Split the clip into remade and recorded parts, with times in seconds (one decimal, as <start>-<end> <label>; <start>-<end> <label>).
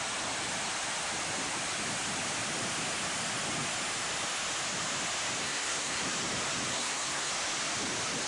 0.0-5.4 recorded; 5.4-6.1 remade; 6.1-6.7 recorded; 6.7-7.3 remade; 7.3-8.3 recorded